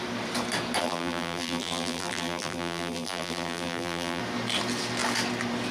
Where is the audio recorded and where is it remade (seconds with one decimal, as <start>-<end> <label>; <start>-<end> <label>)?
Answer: 0.0-0.8 recorded; 0.8-4.2 remade; 4.2-5.7 recorded